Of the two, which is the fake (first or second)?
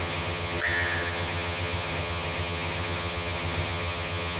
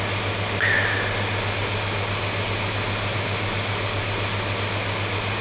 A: first